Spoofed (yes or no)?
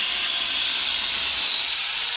yes